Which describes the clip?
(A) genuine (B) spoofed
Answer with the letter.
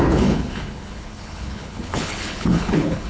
B